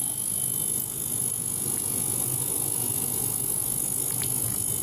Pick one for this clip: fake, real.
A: fake